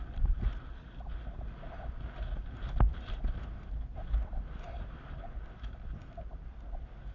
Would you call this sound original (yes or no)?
yes